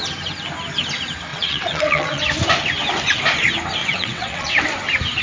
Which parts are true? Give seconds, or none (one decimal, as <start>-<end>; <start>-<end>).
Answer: 0.0-1.3; 2.2-3.8; 4.6-5.2